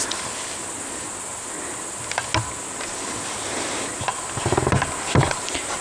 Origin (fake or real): real